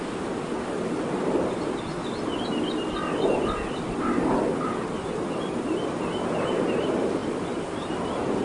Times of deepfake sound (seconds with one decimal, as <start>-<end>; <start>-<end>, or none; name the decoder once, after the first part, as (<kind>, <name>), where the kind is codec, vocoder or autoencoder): none